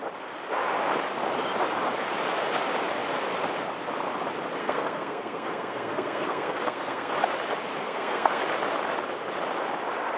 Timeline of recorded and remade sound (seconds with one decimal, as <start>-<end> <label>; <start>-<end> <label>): 0.0-4.6 recorded; 4.6-7.1 remade; 7.1-7.8 recorded; 7.8-8.4 remade; 8.4-10.2 recorded

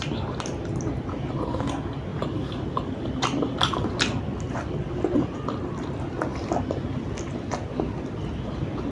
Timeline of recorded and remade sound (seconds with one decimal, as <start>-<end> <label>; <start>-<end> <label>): 0.0-8.9 recorded

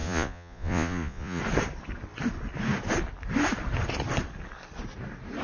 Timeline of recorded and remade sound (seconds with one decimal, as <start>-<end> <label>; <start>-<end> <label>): 0.0-1.4 remade; 1.4-5.4 recorded

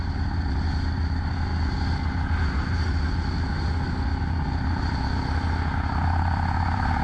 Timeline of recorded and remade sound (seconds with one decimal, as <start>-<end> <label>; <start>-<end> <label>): 0.0-7.0 recorded

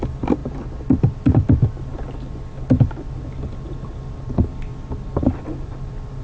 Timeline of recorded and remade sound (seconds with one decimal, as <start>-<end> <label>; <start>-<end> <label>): 0.0-6.2 recorded

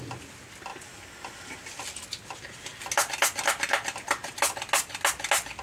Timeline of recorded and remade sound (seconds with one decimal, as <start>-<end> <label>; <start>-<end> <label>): 0.0-5.6 recorded

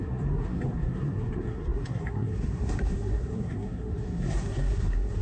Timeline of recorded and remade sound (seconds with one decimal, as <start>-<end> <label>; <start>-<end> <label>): 0.0-5.2 remade

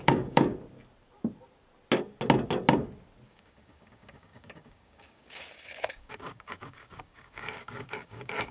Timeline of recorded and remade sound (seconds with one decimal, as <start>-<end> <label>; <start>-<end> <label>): 0.0-0.5 remade; 0.5-3.3 recorded; 3.3-8.5 remade